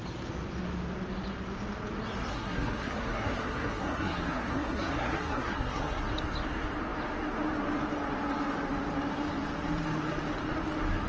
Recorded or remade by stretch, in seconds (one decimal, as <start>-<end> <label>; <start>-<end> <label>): 0.0-2.3 recorded; 2.3-6.0 remade; 6.0-11.1 recorded